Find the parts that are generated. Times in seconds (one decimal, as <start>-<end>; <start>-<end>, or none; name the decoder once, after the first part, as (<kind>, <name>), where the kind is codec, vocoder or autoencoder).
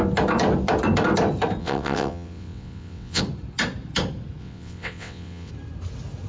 1.6-3.2 (vocoder, WaveNeXt); 4.4-5.5